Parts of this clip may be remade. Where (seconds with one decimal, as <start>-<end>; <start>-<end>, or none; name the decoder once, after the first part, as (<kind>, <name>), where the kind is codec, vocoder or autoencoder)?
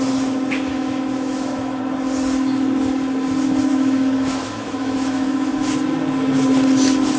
0.7-1.8 (autoencoder, DAC-VAE); 3.7-5.5